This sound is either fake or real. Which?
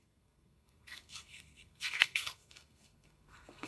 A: fake